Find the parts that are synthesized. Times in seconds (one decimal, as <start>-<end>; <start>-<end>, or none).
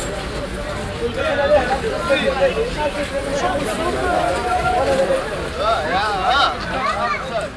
3.2-4.2